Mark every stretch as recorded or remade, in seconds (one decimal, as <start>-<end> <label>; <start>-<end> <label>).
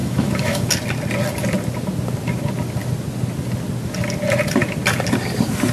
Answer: 0.0-0.7 remade; 0.7-5.7 recorded